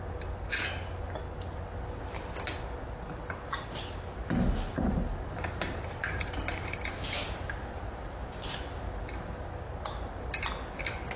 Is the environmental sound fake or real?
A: real